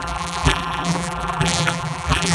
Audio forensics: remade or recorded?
remade